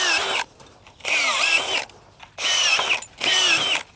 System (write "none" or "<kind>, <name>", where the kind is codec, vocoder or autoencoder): none